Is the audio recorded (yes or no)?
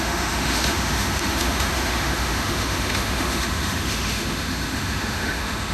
no